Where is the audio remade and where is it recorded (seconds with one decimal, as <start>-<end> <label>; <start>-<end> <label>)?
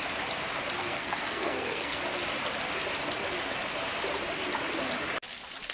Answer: 0.0-0.8 recorded; 0.8-2.0 remade; 2.0-5.7 recorded